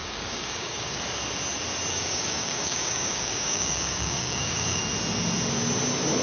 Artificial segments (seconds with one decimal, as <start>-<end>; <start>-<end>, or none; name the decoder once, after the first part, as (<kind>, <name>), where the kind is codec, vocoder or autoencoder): 0.0-1.0 (codec, DAC); 1.9-4.8